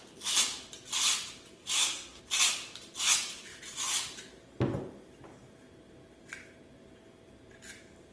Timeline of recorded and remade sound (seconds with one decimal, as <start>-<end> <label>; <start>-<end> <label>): 0.0-1.6 recorded; 1.6-2.2 remade; 2.2-8.1 recorded